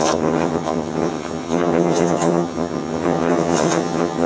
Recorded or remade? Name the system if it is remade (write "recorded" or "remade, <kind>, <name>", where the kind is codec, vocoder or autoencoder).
remade, vocoder, HiFi-GAN